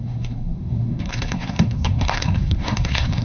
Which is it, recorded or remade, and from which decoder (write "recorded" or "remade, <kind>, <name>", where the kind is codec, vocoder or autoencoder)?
remade, codec, SNAC